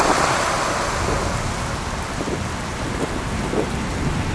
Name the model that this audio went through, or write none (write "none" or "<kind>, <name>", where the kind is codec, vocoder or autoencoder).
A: none